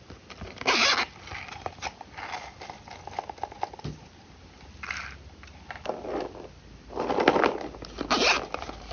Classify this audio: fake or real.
real